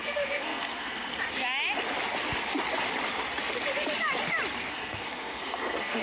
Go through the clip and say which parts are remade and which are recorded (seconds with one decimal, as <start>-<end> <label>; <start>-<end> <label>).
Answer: 0.0-1.1 remade; 1.1-4.7 recorded; 4.7-6.0 remade